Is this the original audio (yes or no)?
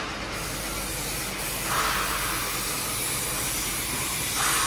yes